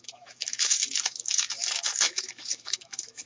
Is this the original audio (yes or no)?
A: no